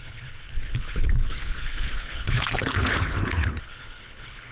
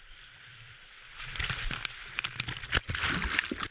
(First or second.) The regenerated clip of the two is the first